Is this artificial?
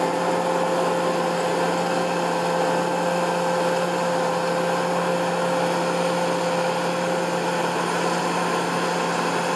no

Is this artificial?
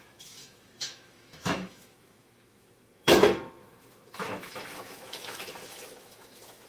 yes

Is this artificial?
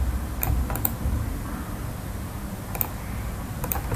no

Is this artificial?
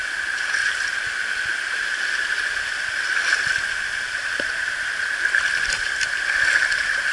no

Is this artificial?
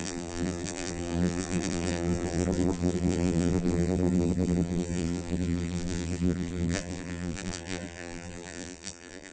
yes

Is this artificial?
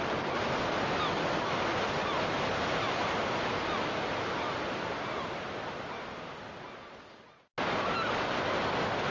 no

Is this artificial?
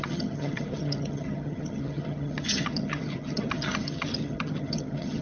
yes